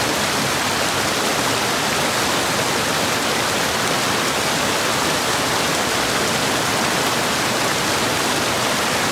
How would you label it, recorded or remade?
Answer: recorded